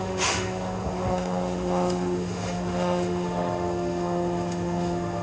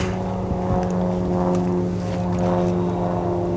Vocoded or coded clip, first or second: first